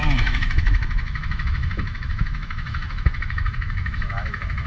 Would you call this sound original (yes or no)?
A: no